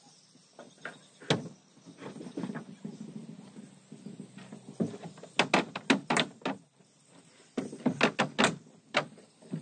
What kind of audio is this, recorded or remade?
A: recorded